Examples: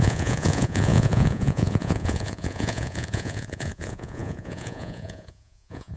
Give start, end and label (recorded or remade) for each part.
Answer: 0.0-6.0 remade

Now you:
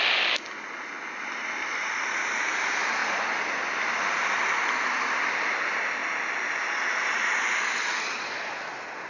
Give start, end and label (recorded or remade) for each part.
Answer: 0.0-9.1 recorded

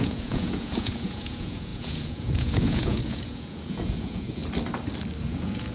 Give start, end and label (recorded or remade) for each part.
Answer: 0.0-4.4 remade; 4.4-5.2 recorded; 5.2-5.7 remade